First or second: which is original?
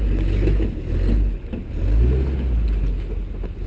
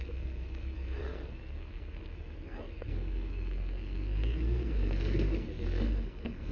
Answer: first